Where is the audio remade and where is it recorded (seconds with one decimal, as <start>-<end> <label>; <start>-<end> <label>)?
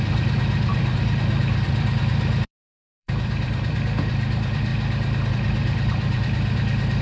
0.0-4.7 remade; 4.7-5.3 recorded; 5.3-7.0 remade